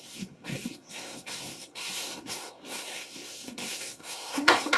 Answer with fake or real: fake